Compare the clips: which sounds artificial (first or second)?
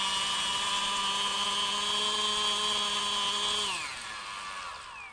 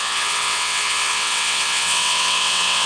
second